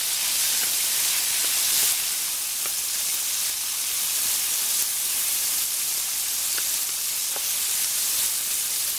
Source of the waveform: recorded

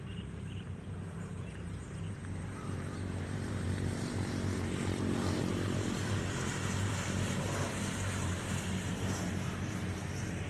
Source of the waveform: remade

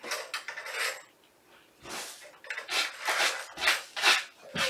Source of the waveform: recorded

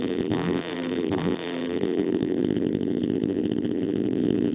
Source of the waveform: remade